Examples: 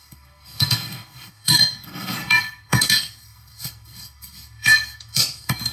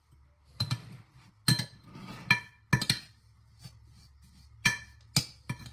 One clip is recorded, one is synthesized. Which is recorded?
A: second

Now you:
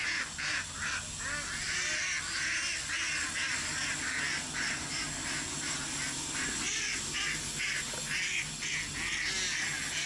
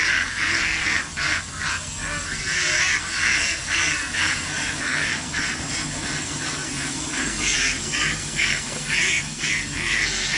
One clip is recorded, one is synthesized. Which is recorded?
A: first